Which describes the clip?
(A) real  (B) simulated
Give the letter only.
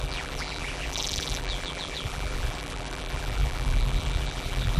B